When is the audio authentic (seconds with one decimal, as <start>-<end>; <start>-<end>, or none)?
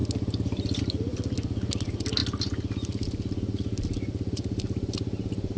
0.0-5.6